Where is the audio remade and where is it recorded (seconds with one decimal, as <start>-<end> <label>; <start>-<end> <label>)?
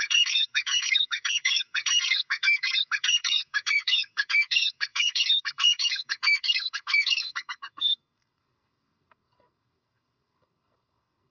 0.0-11.3 remade